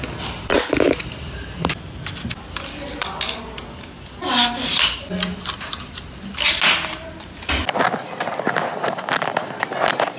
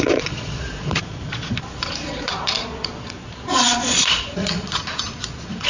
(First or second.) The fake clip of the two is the second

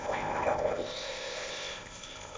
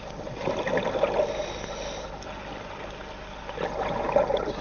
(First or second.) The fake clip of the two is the first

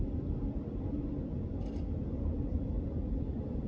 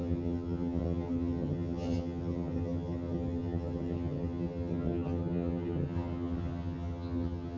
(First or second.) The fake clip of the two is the second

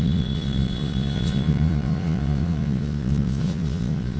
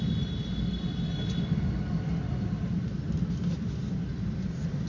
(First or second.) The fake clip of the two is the first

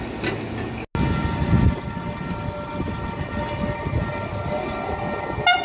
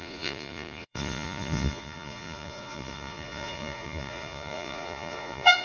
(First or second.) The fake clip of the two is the second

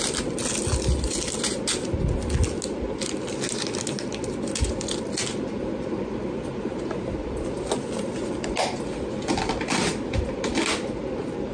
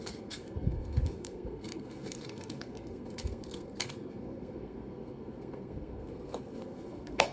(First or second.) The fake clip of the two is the second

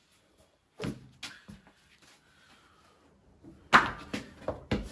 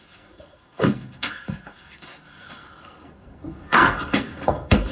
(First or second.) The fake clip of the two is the second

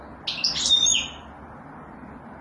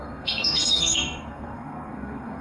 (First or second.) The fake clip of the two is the second